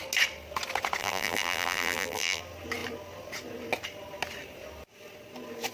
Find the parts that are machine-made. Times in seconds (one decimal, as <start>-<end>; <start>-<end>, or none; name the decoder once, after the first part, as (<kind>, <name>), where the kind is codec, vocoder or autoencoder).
1.0-2.4 (vocoder, BigVGAN v2)

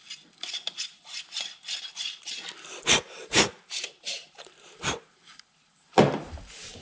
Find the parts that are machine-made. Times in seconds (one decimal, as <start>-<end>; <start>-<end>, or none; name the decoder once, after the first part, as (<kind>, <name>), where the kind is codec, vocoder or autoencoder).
3.2-6.3 (vocoder, BigVGAN v2)